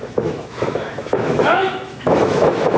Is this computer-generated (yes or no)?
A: yes